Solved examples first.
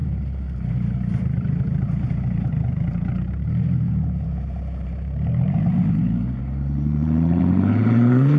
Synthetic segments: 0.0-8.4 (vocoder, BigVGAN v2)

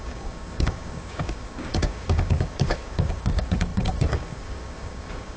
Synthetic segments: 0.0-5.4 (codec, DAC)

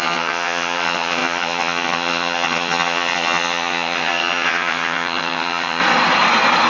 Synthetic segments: 0.0-5.8 (vocoder, HiFi-GAN)

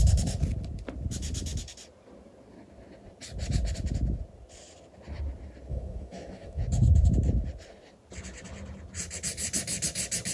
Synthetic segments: 5.7-6.6 (autoencoder, DAC-VAE)